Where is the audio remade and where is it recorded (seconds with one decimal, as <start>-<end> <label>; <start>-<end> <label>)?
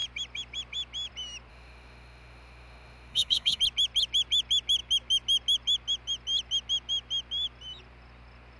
0.0-1.5 recorded; 1.5-3.6 remade; 3.6-8.6 recorded